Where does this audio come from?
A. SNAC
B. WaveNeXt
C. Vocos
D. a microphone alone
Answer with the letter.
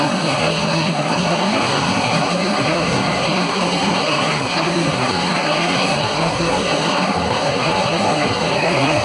A